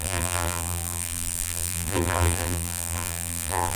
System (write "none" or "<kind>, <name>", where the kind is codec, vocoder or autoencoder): vocoder, BigVGAN v2